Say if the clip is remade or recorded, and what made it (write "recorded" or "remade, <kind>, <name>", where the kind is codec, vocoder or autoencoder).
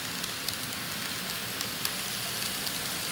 recorded